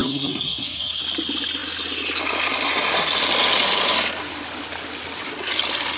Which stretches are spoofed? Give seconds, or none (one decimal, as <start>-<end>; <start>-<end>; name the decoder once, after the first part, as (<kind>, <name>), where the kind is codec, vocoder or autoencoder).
0.0-1.0 (codec, SNAC)